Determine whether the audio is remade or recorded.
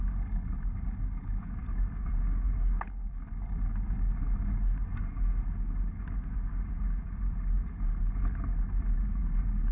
recorded